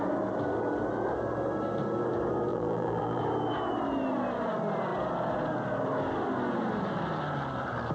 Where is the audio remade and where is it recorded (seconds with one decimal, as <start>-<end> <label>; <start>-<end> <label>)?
0.0-2.5 recorded; 2.5-3.2 remade; 3.2-7.9 recorded